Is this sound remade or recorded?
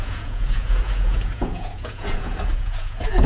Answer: remade